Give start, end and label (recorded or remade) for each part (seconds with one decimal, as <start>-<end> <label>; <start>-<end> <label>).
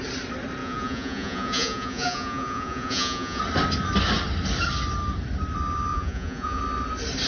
0.0-0.6 recorded; 0.6-3.4 remade; 3.4-5.9 recorded; 5.9-6.6 remade; 6.6-7.3 recorded